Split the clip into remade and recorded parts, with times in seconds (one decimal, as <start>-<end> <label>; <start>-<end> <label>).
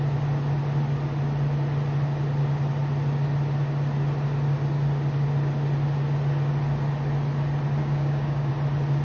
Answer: 0.0-7.8 recorded; 7.8-8.5 remade; 8.5-9.0 recorded